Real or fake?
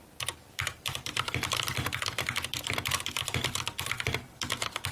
fake